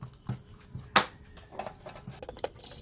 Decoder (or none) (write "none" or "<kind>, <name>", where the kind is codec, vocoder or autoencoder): none